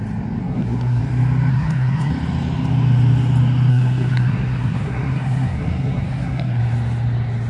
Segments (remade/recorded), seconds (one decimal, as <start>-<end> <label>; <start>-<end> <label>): 0.0-0.4 recorded; 0.4-1.0 remade; 1.0-1.5 recorded; 1.5-2.1 remade; 2.1-3.7 recorded; 3.7-6.6 remade; 6.6-7.5 recorded